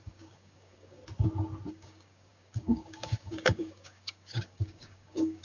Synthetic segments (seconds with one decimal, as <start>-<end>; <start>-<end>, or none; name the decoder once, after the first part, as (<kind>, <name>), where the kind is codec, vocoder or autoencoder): 0.0-1.0 (codec, DAC); 1.7-5.4